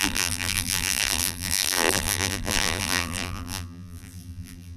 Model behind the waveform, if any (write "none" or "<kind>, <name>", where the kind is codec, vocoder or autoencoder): vocoder, BigVGAN v2